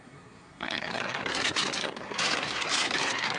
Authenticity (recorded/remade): remade